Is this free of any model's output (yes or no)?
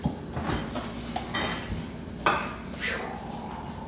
yes